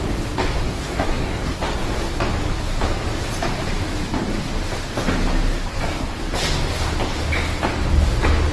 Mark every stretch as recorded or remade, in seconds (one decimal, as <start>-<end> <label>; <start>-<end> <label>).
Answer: 0.0-0.6 recorded; 0.6-1.9 remade; 1.9-5.7 recorded; 5.7-6.2 remade; 6.2-8.5 recorded